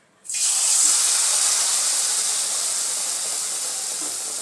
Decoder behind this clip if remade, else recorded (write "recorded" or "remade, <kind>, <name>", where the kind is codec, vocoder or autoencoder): recorded